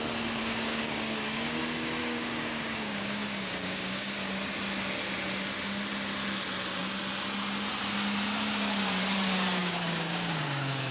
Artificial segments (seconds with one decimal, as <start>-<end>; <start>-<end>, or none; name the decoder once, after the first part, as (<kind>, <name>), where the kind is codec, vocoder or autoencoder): 0.4-1.6 (codec, DAC); 2.0-4.4; 9.6-10.9